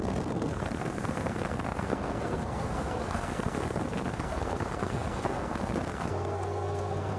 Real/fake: fake